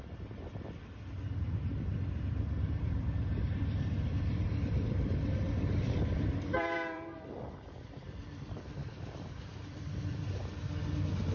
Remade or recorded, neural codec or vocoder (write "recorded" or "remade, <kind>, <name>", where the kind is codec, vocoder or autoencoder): remade, vocoder, BigVGAN v2